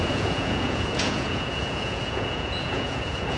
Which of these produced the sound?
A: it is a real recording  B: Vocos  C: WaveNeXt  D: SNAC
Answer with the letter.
B